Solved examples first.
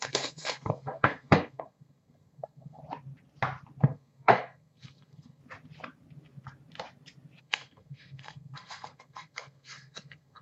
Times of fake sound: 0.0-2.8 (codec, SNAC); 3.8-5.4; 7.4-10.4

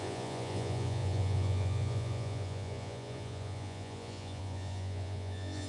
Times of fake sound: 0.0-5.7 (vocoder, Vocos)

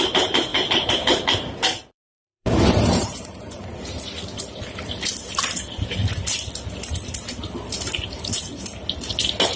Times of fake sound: 0.5-4.0 (vocoder, BigVGAN v2)